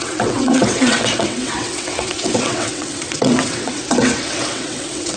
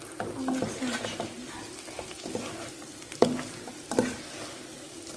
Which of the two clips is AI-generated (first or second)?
first